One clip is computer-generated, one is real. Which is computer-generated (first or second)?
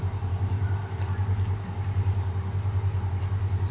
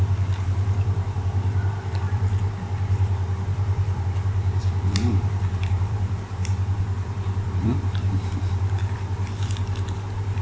second